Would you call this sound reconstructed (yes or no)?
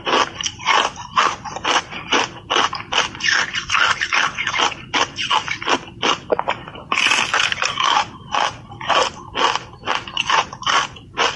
yes